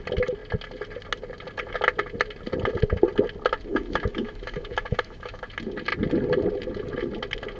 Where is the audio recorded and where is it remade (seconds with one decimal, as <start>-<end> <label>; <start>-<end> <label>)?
0.0-3.7 recorded; 3.7-5.4 remade; 5.4-7.6 recorded